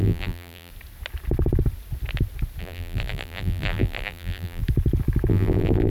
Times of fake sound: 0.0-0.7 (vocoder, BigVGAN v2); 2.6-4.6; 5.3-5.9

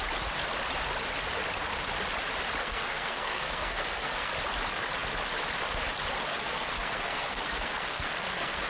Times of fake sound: 2.6-4.3 (codec, SNAC); 6.3-8.7

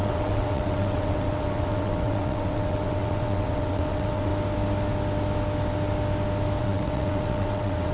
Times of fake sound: 0.0-4.3 (vocoder, WaveNeXt); 6.6-7.9

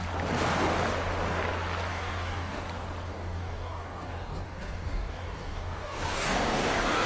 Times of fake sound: 1.9-2.6 (codec, DAC); 3.1-7.1

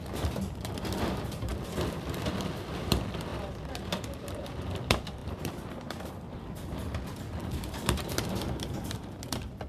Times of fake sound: 0.0-6.8 (vocoder, BigVGAN v2); 7.6-9.7